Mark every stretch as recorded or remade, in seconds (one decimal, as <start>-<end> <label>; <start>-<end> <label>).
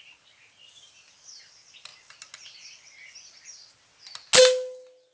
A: 0.0-5.1 recorded